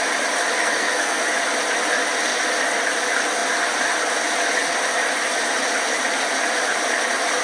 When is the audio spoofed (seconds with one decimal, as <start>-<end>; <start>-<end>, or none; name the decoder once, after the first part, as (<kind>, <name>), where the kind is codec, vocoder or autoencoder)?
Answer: 0.6-1.2 (codec, SNAC)

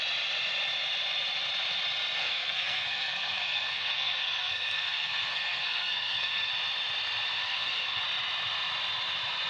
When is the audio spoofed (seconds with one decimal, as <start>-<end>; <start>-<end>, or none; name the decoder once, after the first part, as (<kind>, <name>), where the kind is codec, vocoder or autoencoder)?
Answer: 2.2-6.5 (codec, SNAC); 7.4-8.0

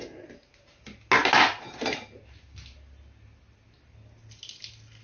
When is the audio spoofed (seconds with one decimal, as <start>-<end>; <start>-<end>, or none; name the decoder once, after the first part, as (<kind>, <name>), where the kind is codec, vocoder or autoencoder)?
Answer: none

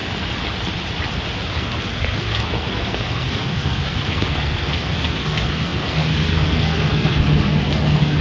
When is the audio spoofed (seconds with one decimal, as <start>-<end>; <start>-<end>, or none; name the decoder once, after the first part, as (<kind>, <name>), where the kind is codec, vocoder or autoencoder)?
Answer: 1.5-8.2 (codec, SNAC)

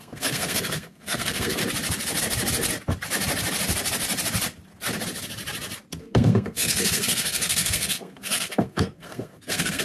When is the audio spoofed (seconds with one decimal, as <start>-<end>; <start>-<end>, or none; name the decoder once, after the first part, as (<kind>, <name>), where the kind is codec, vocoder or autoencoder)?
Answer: 0.0-1.6 (codec, SNAC); 6.0-9.8

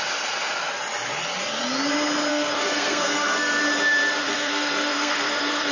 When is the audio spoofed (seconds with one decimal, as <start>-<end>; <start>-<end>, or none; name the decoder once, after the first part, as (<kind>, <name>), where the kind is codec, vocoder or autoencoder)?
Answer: 2.3-3.6 (codec, SNAC); 4.2-5.7